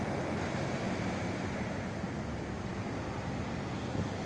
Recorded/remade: recorded